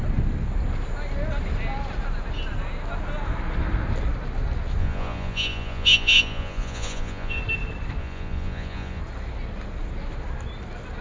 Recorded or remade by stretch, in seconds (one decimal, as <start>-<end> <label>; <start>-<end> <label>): 0.0-4.8 recorded; 4.8-7.4 remade; 7.4-8.0 recorded; 8.0-9.0 remade; 9.0-11.0 recorded